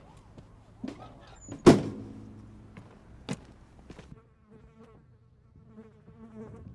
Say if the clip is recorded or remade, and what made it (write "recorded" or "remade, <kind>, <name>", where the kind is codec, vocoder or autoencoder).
recorded